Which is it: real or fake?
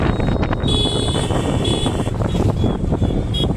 fake